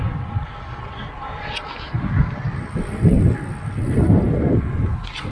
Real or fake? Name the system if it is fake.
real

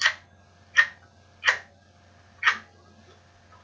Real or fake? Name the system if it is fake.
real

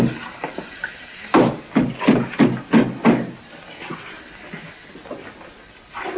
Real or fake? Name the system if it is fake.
real